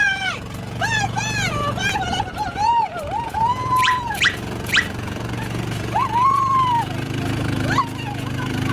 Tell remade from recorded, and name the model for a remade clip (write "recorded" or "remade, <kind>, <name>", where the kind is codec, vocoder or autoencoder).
remade, vocoder, Vocos